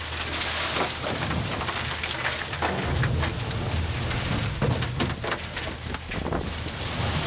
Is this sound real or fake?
real